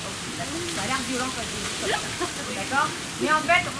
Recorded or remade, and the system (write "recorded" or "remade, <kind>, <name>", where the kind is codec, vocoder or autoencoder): recorded